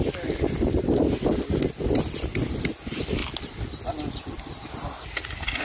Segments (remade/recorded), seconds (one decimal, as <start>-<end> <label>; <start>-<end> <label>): 0.0-5.6 recorded